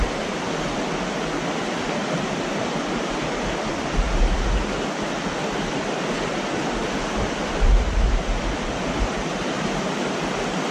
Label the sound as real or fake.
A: real